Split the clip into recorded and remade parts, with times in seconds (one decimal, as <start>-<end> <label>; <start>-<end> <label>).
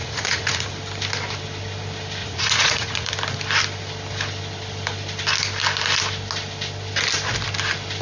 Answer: 0.0-0.7 remade; 0.7-2.2 recorded; 2.2-3.1 remade; 3.1-8.0 recorded